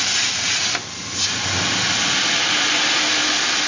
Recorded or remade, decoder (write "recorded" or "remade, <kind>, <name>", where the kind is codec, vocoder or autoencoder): recorded